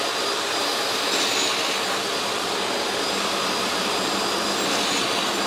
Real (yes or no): yes